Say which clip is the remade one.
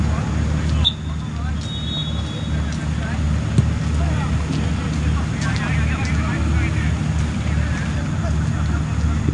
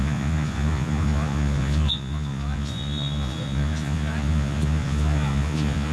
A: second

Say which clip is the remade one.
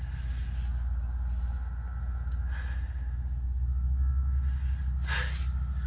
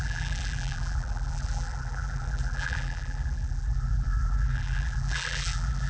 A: second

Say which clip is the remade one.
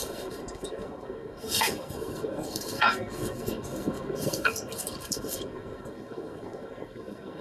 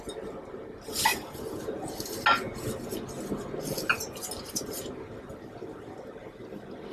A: first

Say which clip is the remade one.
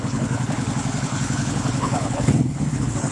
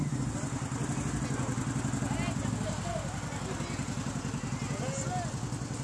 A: first